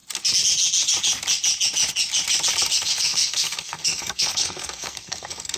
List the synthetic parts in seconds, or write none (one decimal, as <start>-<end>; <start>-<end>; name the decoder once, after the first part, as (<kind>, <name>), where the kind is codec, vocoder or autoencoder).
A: 2.7-5.6 (codec, SNAC)